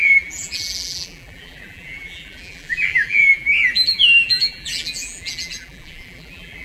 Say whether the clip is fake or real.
fake